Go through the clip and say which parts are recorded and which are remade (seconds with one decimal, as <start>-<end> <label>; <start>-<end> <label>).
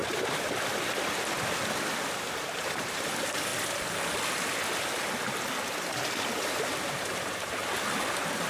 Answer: 0.0-2.6 recorded; 2.6-3.5 remade; 3.5-6.6 recorded; 6.6-7.6 remade; 7.6-8.1 recorded; 8.1-8.5 remade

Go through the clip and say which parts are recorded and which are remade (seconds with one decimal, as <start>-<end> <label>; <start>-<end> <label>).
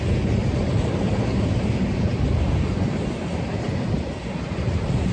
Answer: 0.0-5.1 recorded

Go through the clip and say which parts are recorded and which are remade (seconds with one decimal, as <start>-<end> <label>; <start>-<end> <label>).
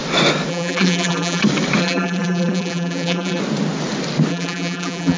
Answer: 0.0-0.5 recorded; 0.5-1.4 remade; 1.4-1.8 recorded; 1.8-3.4 remade; 3.4-4.3 recorded; 4.3-5.2 remade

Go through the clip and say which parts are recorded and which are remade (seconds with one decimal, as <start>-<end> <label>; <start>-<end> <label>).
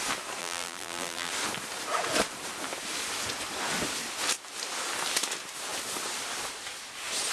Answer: 0.0-0.4 recorded; 0.4-1.3 remade; 1.3-7.3 recorded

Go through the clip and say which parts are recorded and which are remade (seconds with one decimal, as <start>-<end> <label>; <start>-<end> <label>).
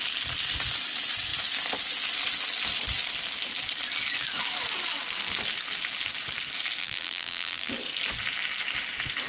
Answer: 0.0-6.8 recorded; 6.8-7.7 remade; 7.7-9.3 recorded